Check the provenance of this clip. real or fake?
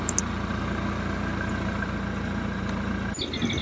real